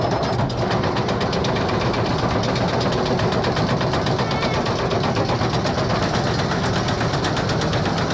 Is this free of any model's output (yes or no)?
yes